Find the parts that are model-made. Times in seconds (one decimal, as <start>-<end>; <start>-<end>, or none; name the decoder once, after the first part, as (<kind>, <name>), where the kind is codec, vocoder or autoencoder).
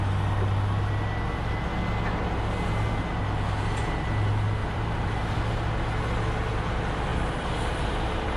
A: 4.6-5.4 (vocoder, BigVGAN v2); 7.1-8.4